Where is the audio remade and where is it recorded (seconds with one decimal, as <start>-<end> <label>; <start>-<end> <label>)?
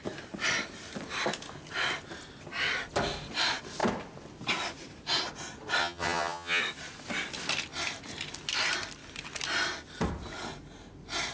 0.0-5.8 recorded; 5.8-6.6 remade; 6.6-11.3 recorded